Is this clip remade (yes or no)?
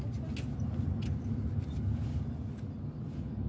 no